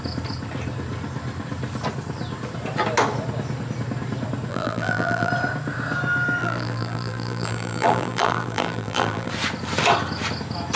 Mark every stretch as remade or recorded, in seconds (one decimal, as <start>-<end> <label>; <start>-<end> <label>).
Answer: 0.0-4.5 recorded; 4.5-5.3 remade; 5.3-6.4 recorded; 6.4-9.3 remade; 9.3-10.8 recorded